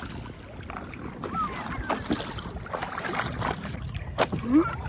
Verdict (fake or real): real